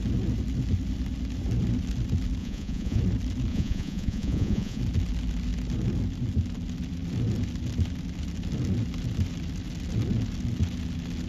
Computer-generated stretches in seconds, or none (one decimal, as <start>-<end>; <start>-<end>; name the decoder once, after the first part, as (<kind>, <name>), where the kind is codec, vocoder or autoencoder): 2.4-3.0 (vocoder, Vocos); 3.5-4.8